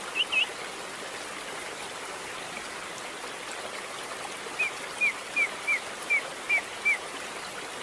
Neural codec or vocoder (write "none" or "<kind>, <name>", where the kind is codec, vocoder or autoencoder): none